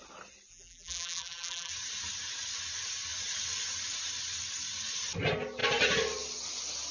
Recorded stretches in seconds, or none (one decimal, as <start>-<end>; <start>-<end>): 0.0-0.5; 1.7-6.9